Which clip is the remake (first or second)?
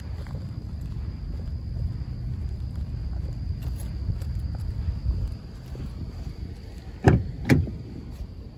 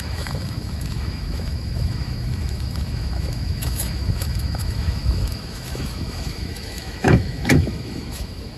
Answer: second